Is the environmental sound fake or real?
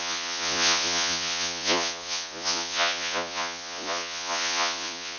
fake